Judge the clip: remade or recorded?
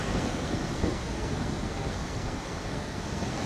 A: remade